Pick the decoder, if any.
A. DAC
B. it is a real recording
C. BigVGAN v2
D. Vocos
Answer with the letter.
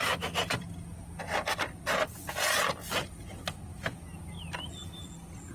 B